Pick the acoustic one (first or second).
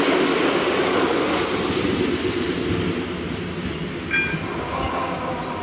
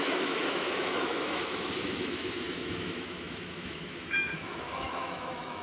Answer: first